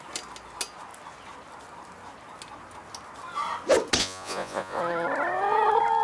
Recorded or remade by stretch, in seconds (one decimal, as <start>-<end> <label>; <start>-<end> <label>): 0.0-4.0 recorded; 4.0-4.8 remade; 4.8-6.0 recorded